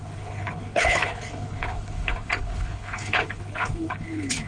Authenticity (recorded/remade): remade